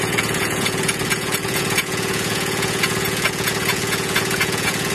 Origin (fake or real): fake